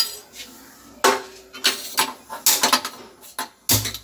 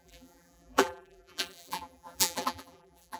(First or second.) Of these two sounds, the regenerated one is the second